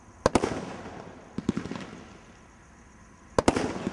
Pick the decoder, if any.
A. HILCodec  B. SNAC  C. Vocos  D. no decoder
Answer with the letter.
D